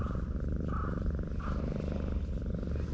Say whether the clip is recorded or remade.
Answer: recorded